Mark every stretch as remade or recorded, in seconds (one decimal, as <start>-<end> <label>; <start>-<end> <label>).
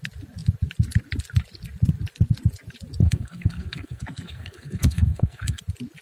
0.0-3.0 recorded; 3.0-5.6 remade; 5.6-6.0 recorded